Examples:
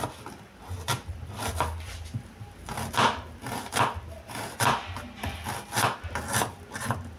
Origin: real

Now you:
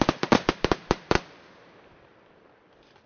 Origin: fake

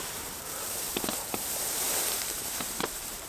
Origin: fake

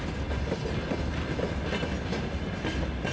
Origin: real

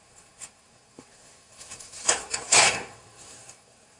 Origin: fake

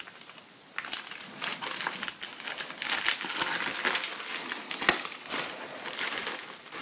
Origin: real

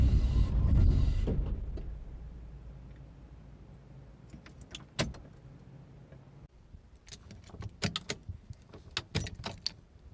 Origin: real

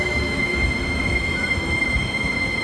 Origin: fake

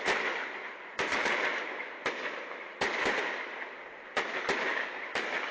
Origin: fake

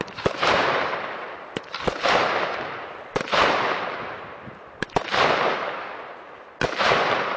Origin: fake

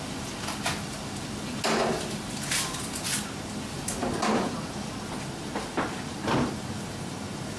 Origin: real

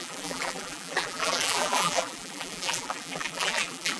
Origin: fake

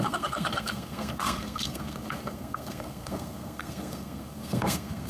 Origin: fake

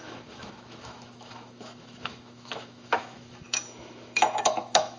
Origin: fake